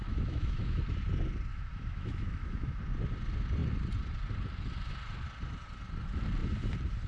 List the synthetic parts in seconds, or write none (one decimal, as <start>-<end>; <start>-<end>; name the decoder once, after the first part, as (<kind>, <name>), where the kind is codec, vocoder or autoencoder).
0.0-0.8 (autoencoder, DAC-VAE); 1.5-2.8